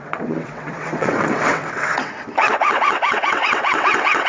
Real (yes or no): no